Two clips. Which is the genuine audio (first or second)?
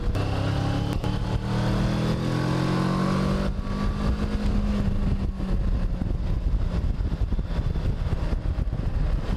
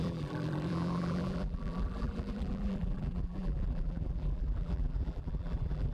first